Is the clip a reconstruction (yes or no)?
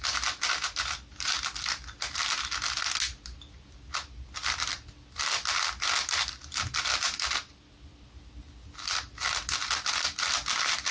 no